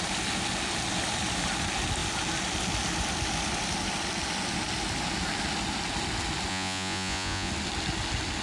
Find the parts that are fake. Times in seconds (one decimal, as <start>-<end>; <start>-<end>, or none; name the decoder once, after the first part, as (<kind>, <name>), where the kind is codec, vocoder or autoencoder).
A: 6.5-7.5 (vocoder, Vocos)